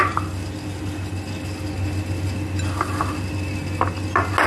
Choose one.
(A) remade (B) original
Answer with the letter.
B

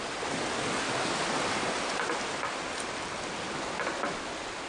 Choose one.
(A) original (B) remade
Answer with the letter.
A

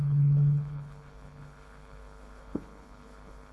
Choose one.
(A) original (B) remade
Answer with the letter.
B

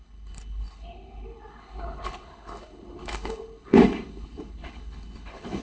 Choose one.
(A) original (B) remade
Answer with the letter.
B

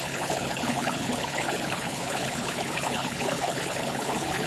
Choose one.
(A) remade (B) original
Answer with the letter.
A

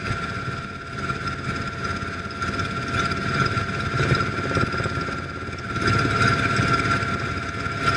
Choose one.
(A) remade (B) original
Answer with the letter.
B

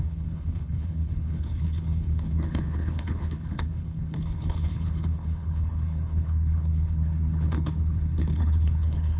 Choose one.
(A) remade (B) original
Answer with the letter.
A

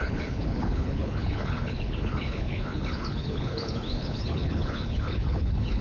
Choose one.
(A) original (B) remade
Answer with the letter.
B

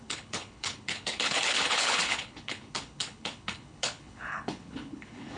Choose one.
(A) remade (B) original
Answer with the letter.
A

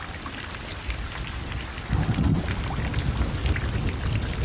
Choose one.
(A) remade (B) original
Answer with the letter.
B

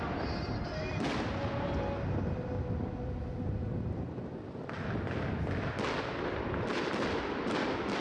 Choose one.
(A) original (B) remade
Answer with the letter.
A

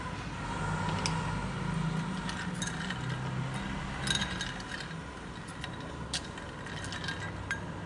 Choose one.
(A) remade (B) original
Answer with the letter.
B